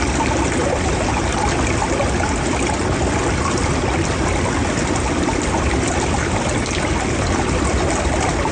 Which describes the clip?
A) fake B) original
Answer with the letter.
B